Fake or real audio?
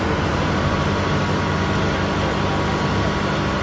real